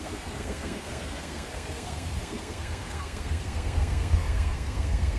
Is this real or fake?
fake